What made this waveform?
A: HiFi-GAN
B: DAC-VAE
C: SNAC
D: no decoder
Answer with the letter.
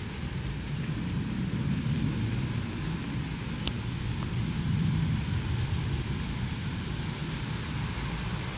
D